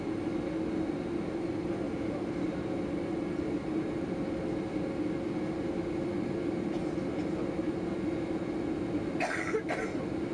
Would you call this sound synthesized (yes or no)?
no